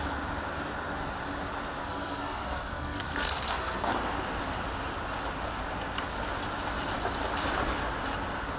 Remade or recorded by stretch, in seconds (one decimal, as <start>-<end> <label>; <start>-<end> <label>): 0.0-1.8 recorded; 1.8-3.9 remade; 3.9-8.6 recorded